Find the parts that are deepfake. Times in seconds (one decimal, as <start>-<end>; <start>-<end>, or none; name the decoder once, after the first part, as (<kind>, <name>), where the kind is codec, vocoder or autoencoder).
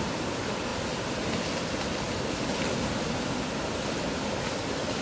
none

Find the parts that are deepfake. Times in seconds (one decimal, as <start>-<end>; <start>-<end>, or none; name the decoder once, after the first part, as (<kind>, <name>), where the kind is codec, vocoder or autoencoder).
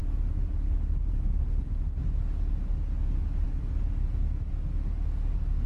none